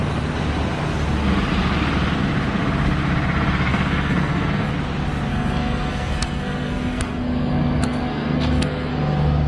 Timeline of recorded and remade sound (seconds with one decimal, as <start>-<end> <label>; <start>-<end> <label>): 0.0-3.7 recorded; 3.7-4.7 remade; 4.7-5.3 recorded; 5.3-8.9 remade; 8.9-9.5 recorded